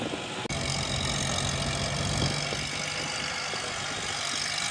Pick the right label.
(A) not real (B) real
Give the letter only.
B